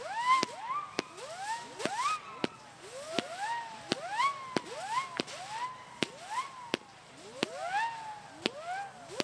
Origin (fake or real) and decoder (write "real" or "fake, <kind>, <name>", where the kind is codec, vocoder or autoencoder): real